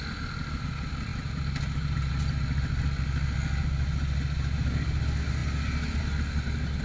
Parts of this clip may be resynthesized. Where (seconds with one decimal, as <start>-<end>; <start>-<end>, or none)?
none